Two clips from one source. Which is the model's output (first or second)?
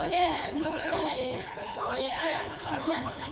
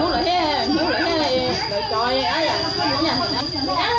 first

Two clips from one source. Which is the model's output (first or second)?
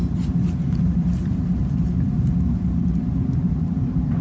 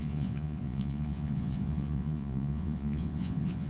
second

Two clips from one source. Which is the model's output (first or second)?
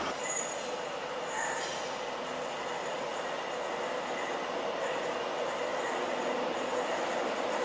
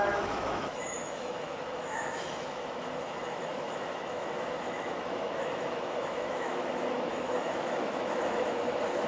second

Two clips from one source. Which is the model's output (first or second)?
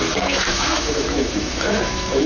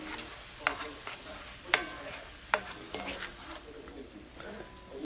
first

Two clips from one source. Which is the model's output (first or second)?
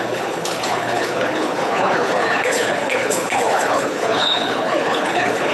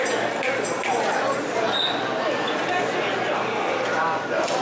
first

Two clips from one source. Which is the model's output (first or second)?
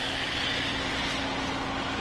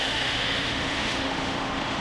second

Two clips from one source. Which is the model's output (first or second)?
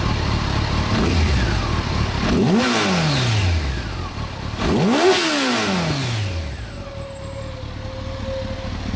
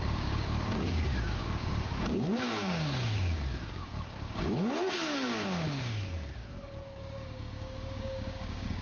second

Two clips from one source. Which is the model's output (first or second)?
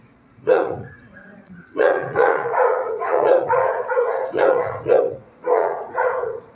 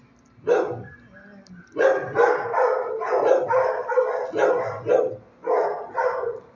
first